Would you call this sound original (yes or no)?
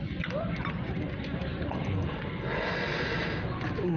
yes